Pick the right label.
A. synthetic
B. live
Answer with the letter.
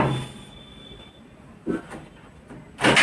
B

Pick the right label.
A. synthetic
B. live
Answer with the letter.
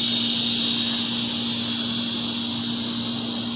B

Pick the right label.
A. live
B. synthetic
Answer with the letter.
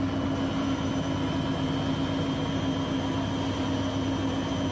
A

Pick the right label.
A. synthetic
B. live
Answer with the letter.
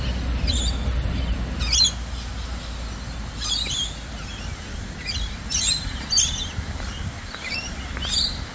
B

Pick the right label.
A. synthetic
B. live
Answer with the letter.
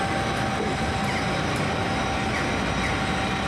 B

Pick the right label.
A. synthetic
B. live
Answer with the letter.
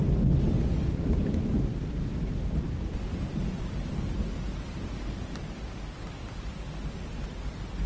B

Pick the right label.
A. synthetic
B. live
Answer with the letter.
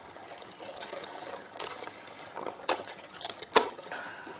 A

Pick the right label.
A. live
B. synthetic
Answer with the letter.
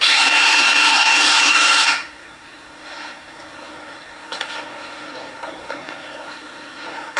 B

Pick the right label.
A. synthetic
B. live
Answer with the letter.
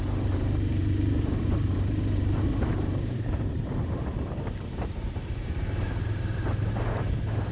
A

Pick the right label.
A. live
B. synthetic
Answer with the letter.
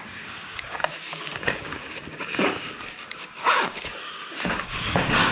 B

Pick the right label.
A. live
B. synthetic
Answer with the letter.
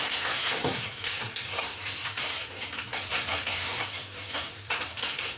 B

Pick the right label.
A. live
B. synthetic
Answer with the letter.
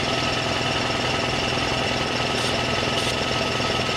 A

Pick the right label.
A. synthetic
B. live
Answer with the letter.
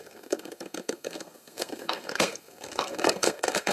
A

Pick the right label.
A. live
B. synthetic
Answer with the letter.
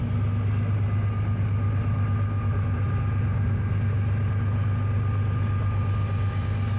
A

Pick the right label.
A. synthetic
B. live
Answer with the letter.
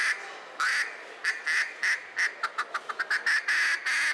B